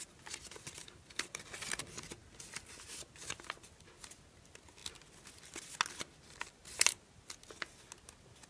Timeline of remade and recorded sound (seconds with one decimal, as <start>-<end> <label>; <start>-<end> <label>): 0.0-0.8 recorded; 0.8-1.3 remade; 1.3-8.5 recorded